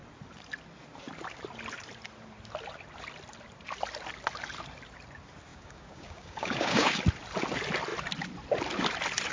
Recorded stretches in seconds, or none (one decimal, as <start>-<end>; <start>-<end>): 0.0-5.5; 7.0-9.3